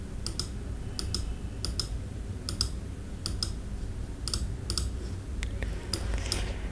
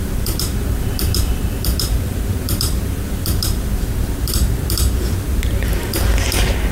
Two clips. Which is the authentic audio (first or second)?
first